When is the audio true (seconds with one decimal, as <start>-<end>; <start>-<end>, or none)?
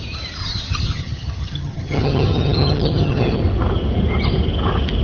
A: 0.0-0.4; 3.4-5.0